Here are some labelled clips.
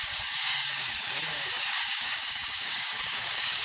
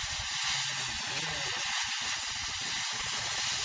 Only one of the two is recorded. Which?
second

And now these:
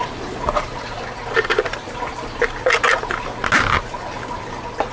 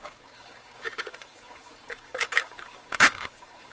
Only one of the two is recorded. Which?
first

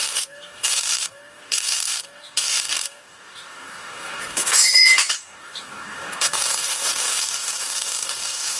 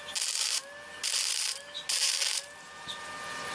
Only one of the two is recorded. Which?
second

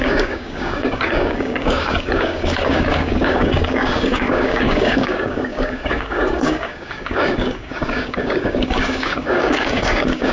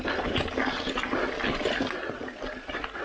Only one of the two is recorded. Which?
second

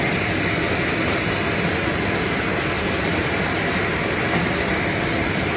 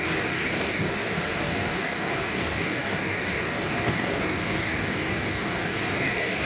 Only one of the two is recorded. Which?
first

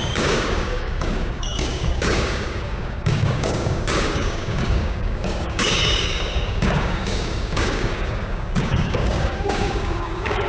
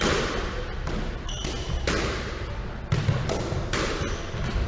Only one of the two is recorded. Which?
second